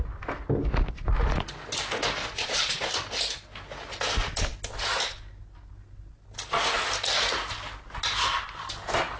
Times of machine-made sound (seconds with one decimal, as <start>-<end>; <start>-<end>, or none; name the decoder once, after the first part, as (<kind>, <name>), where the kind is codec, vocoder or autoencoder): 2.2-2.9 (vocoder, Vocos)